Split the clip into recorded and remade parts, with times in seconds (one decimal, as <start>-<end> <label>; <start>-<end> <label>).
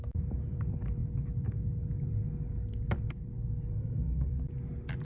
0.0-3.7 recorded; 3.7-4.3 remade; 4.3-5.0 recorded